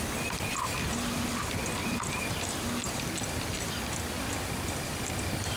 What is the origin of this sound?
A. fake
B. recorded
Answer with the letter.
B